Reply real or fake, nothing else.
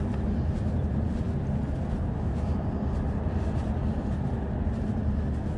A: real